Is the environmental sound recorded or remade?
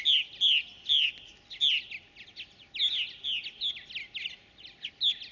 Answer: recorded